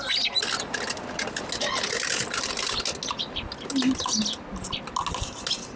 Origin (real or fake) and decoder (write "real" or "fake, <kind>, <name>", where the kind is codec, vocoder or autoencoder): real